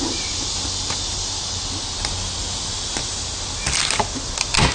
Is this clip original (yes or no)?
yes